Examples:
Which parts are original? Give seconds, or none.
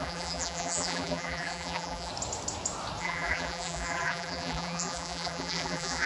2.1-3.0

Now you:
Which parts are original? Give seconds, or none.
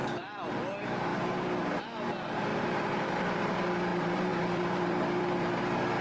0.5-1.1; 1.8-2.5; 3.4-3.9; 5.6-6.0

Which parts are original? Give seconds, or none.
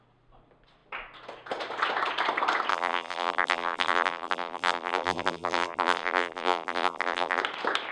0.0-2.7; 7.4-7.9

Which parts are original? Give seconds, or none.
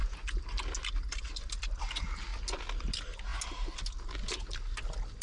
0.0-5.2